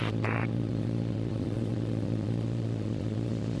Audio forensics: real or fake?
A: fake